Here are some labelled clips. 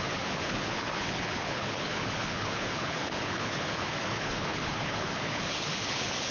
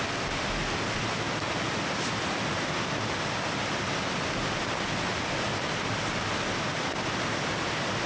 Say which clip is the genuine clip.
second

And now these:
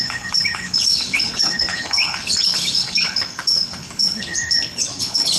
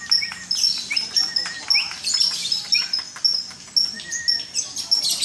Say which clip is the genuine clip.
second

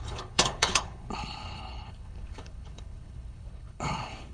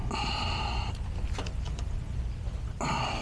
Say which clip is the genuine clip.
second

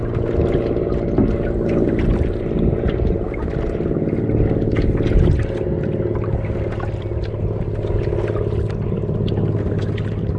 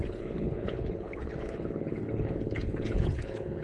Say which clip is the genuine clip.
first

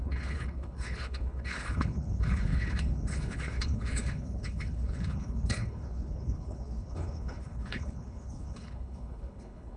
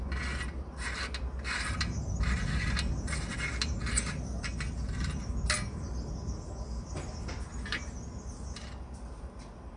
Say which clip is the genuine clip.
second